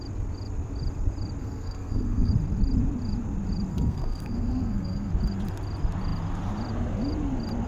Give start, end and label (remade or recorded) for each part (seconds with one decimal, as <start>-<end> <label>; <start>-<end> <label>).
0.0-1.4 recorded; 1.4-2.3 remade; 2.3-3.7 recorded; 3.7-5.1 remade; 5.1-7.7 recorded